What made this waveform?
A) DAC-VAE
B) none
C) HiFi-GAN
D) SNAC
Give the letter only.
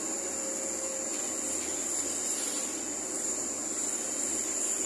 B